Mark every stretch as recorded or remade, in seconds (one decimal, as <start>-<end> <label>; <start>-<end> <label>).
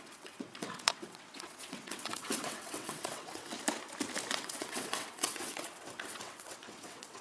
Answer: 0.0-3.5 remade; 3.5-4.3 recorded; 4.3-7.2 remade